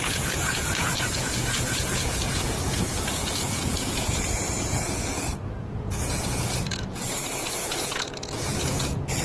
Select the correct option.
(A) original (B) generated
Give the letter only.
B